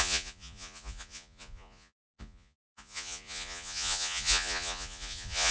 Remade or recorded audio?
remade